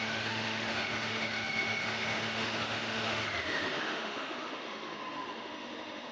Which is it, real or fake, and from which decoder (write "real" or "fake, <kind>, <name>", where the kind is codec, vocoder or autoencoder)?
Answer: fake, autoencoder, DAC-VAE